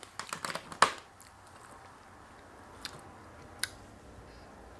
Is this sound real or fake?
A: real